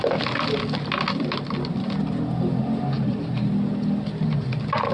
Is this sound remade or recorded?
recorded